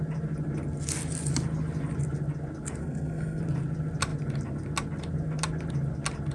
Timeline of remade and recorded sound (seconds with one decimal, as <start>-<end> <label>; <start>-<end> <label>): 0.0-2.8 recorded; 2.8-3.4 remade; 3.4-6.3 recorded